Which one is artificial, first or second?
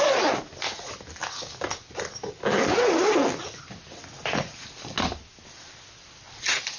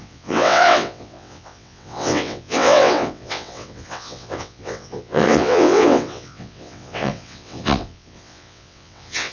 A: second